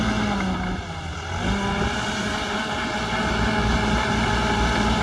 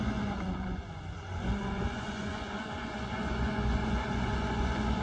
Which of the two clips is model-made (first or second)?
second